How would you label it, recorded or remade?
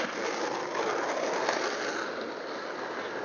recorded